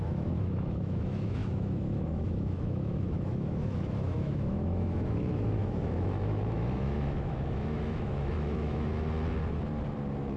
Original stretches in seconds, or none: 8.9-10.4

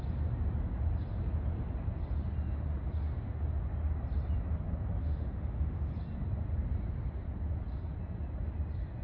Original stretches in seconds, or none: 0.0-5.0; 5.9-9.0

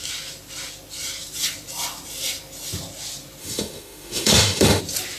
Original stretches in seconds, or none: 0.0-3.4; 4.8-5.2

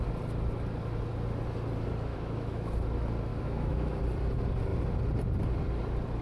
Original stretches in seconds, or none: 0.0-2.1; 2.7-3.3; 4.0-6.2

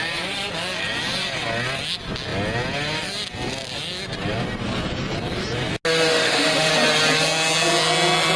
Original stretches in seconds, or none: 0.0-6.1; 6.7-8.4

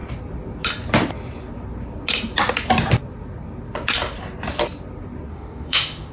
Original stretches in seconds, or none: 0.0-5.3

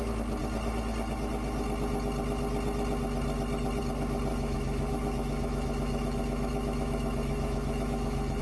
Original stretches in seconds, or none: 0.0-4.3

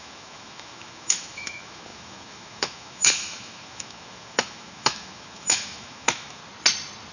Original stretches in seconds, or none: 6.4-7.1